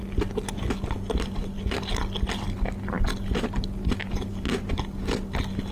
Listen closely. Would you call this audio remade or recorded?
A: recorded